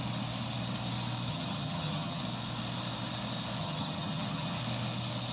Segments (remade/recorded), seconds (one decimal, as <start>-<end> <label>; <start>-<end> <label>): 0.0-1.3 recorded; 1.3-2.2 remade; 2.2-3.6 recorded; 3.6-4.6 remade; 4.6-5.3 recorded